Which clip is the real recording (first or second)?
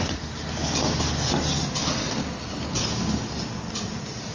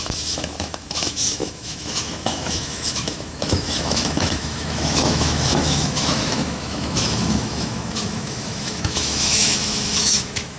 first